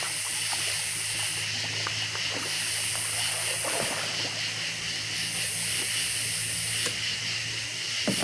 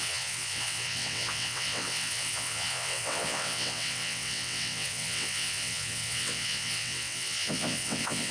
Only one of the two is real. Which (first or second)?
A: first